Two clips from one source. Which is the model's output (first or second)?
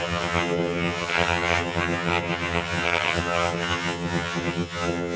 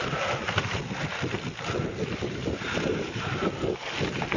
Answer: first